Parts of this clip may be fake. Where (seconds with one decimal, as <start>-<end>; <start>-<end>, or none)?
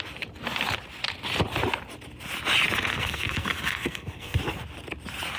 2.9-4.4